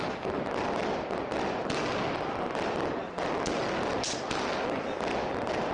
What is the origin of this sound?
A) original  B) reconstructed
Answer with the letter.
A